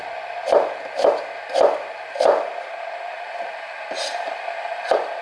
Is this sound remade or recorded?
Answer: recorded